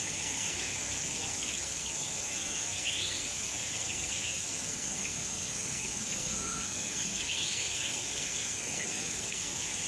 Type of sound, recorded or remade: remade